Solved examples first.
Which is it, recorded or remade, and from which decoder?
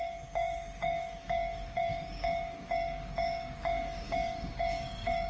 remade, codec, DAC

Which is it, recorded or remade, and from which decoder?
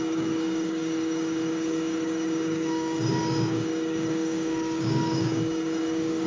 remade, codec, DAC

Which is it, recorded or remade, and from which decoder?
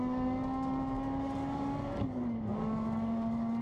remade, codec, DAC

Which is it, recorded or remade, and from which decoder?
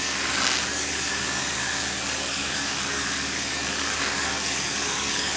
remade, codec, DAC